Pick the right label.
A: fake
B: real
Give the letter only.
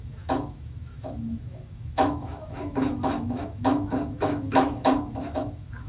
A